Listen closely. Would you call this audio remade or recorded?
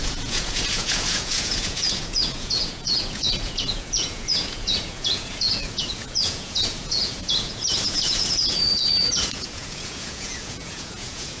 remade